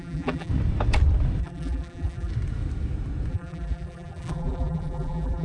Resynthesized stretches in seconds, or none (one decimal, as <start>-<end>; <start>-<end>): 0.0-0.5; 1.4-2.3; 3.3-5.4